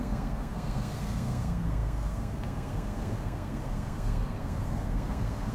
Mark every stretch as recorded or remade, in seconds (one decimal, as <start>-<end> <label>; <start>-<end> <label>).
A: 0.0-5.5 remade